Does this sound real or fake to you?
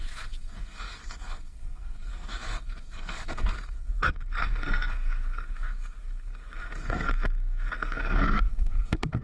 fake